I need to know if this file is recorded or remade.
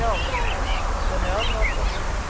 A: recorded